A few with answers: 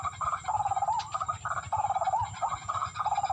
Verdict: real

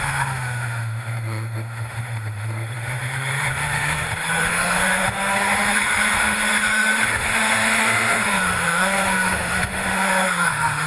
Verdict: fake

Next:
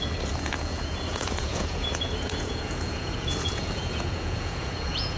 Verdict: fake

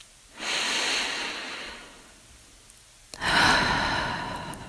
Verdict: real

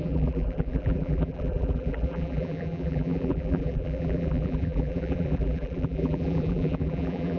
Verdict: fake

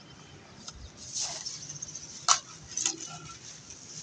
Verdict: real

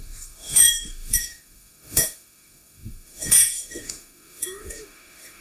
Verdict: fake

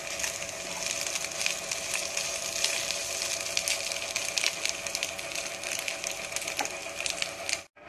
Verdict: real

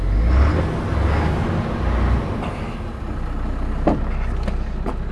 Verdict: real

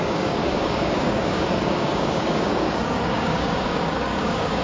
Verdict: fake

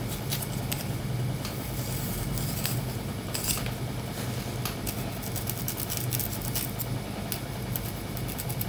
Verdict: real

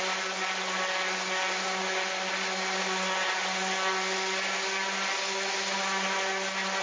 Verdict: real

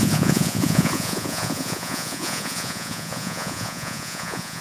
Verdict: fake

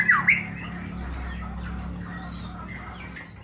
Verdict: real